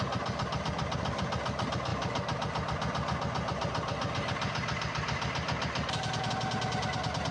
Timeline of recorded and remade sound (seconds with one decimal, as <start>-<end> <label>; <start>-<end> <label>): 0.0-7.3 recorded